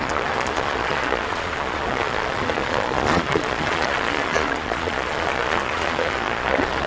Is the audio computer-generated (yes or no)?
yes